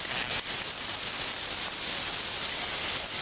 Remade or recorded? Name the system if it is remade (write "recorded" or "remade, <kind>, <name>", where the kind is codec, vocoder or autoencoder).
recorded